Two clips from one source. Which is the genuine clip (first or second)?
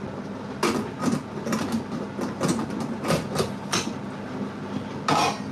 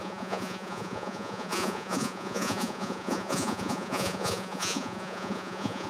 first